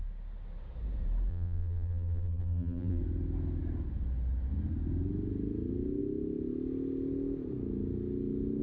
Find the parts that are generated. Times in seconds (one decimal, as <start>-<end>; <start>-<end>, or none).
1.3-3.0